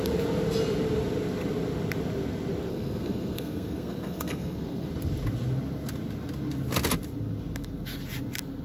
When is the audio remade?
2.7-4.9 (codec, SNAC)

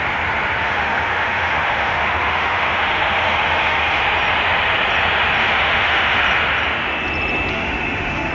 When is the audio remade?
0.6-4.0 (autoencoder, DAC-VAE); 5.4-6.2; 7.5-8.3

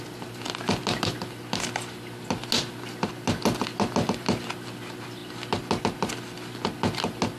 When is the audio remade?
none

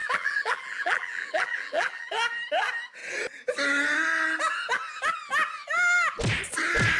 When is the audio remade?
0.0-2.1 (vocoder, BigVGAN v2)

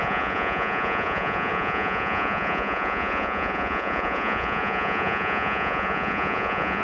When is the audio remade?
0.0-6.8 (vocoder, Vocos)

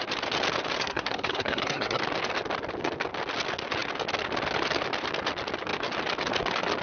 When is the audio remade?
0.8-2.0 (codec, SNAC)

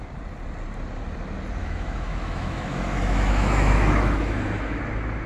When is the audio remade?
1.6-4.8 (autoencoder, DAC-VAE)

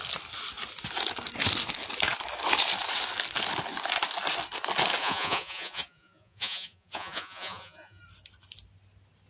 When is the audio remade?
5.0-8.0 (vocoder, Vocos)